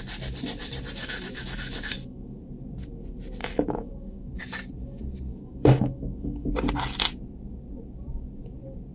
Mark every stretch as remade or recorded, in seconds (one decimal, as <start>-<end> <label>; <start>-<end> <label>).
0.0-1.0 recorded; 1.0-2.4 remade; 2.4-3.4 recorded; 3.4-4.4 remade; 4.4-5.3 recorded; 5.3-6.5 remade; 6.5-8.9 recorded